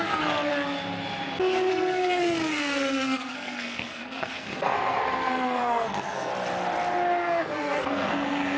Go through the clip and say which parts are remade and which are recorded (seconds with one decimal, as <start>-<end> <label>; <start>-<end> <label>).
0.0-0.5 remade; 0.5-1.7 recorded; 1.7-6.3 remade; 6.3-7.4 recorded; 7.4-8.6 remade